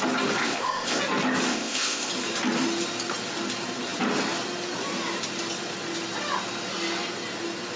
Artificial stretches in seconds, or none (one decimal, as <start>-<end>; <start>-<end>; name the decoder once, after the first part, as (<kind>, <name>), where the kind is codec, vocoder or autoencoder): 0.4-1.0 (codec, ZipCodec); 1.5-2.1